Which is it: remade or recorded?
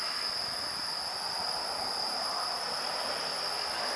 recorded